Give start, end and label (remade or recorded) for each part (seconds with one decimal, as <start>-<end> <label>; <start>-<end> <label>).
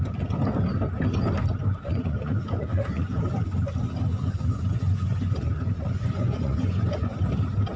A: 0.0-1.7 recorded; 1.7-3.2 remade; 3.2-4.1 recorded; 4.1-7.2 remade; 7.2-7.8 recorded